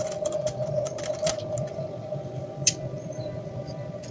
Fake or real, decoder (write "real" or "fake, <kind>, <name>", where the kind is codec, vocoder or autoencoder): fake, vocoder, BigVGAN v2